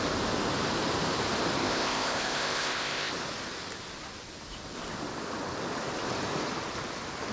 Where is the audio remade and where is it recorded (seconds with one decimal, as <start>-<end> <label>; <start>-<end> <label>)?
0.0-1.6 recorded; 1.6-3.1 remade; 3.1-7.3 recorded